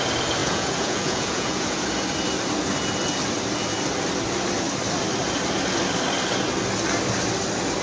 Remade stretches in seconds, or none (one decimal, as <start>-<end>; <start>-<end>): 0.4-1.8